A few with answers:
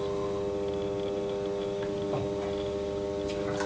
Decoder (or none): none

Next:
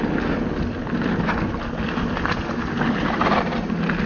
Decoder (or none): none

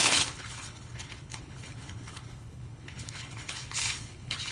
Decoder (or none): codec, HILCodec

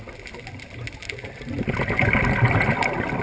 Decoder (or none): none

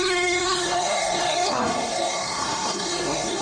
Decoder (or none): codec, SNAC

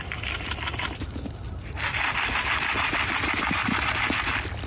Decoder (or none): none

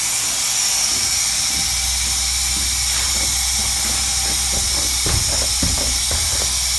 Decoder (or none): none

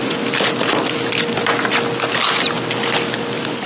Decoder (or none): none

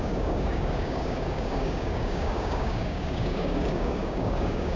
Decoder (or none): codec, DAC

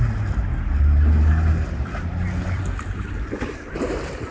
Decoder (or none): none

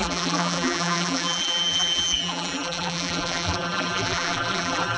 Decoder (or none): vocoder, BigVGAN v2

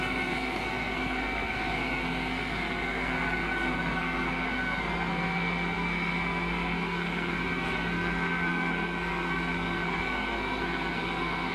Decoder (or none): codec, SNAC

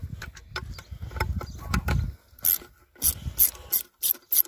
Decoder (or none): none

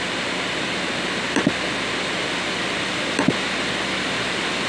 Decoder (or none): none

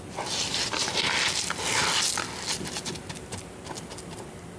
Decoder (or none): none